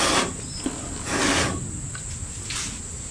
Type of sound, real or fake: real